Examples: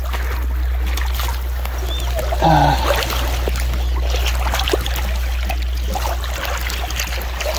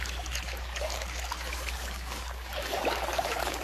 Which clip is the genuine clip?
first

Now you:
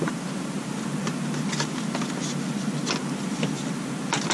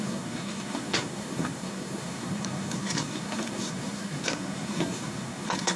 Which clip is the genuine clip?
first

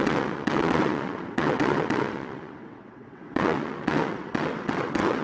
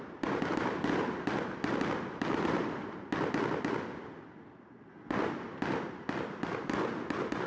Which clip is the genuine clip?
second